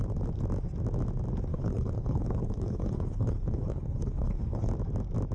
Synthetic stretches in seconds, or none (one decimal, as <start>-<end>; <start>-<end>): 1.5-4.7